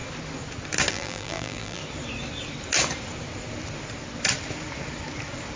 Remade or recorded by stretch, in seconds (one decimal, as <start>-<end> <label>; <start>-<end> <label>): 0.0-0.9 recorded; 0.9-1.8 remade; 1.8-5.6 recorded